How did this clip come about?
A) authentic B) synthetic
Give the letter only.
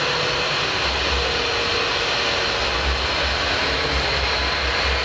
A